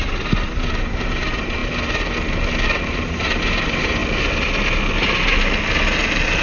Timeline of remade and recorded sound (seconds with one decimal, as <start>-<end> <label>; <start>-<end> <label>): 0.0-1.6 remade; 1.6-2.8 recorded; 2.8-4.0 remade; 4.0-6.4 recorded